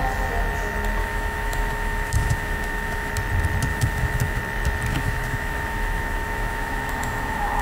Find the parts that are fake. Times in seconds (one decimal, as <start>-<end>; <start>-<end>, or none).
1.0-3.1; 3.7-4.4; 4.9-7.6